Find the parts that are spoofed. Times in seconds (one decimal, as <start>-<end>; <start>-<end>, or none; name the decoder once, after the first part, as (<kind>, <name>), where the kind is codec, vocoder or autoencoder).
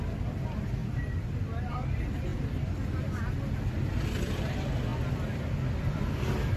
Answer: none